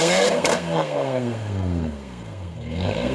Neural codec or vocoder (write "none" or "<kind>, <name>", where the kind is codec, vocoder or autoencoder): codec, SNAC